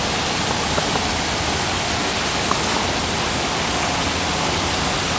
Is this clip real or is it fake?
real